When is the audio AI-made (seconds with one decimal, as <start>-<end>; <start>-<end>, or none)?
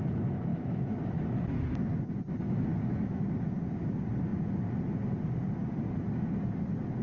0.5-1.6; 2.7-3.4